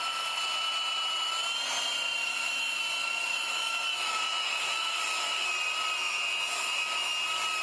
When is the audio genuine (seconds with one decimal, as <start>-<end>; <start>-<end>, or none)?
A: 0.0-2.2; 2.8-3.3; 5.5-6.0; 7.1-7.6